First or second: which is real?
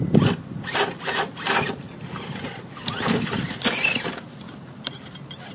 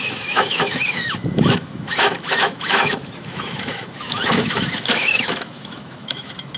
first